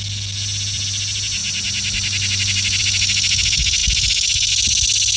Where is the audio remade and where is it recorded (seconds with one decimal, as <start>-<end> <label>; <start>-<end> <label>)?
0.0-5.2 recorded